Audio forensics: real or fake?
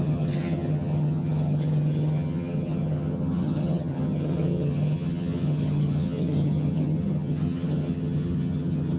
fake